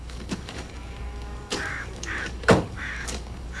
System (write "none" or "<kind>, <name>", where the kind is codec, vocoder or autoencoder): codec, DAC